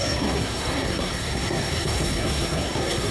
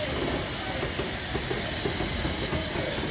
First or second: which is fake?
first